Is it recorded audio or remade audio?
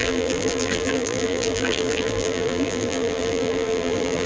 remade